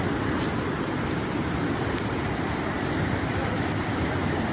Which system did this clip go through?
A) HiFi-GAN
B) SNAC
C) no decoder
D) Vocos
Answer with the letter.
C